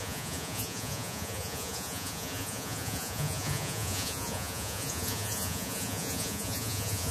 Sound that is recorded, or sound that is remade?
remade